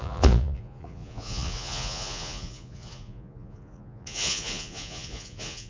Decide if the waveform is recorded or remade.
remade